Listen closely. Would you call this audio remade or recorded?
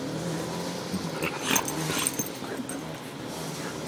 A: recorded